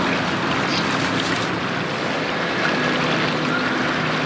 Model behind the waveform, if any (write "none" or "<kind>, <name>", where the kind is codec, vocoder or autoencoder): none